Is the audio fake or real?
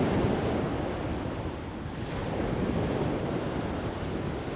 real